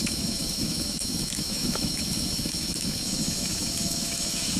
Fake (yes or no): yes